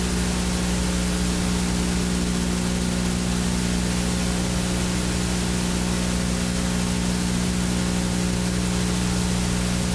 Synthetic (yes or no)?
no